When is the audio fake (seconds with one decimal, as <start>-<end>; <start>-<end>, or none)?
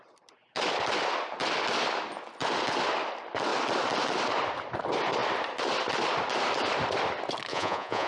7.5-8.1